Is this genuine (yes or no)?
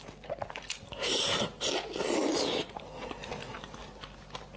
yes